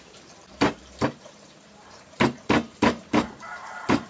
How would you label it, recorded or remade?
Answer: remade